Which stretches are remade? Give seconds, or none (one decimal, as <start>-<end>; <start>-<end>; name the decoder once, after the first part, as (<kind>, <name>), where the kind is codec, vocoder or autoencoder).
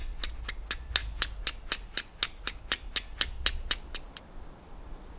none